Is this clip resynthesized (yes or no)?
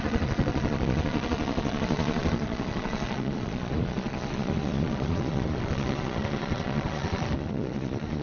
yes